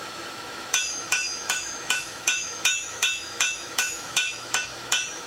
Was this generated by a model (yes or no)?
yes